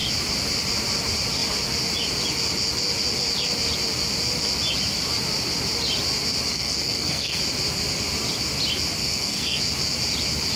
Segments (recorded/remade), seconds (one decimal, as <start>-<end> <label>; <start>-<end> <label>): 0.0-6.5 recorded; 6.5-7.4 remade; 7.4-9.0 recorded; 9.0-9.6 remade; 9.6-10.6 recorded